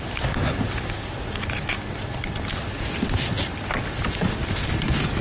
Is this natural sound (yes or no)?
yes